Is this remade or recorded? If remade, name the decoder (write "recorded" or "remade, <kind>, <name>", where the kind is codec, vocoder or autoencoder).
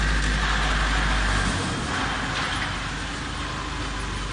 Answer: recorded